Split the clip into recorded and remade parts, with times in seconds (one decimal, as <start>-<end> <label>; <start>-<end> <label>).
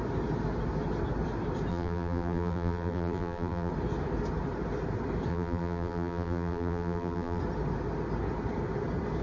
0.0-1.7 recorded; 1.7-3.7 remade; 3.7-5.3 recorded; 5.3-7.4 remade; 7.4-9.2 recorded